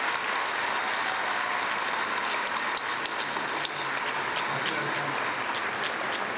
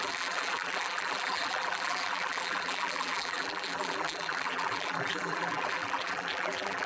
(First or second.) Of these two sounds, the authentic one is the first